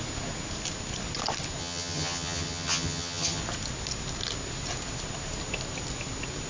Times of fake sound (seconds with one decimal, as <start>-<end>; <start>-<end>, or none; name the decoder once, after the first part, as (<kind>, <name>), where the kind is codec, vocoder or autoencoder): 1.6-3.4 (vocoder, HiFi-GAN)